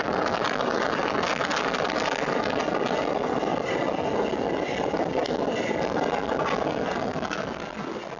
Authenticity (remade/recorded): recorded